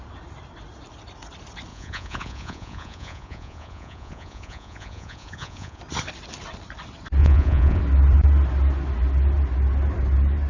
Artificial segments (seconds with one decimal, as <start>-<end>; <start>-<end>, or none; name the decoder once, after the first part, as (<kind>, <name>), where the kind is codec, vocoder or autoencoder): 1.7-5.8 (vocoder, Vocos); 7.2-7.8